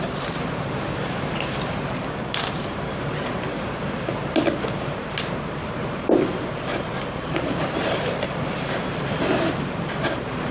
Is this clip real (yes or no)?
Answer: no